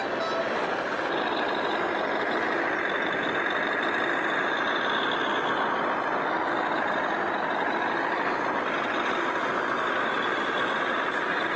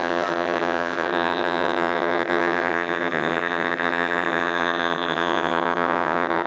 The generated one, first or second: second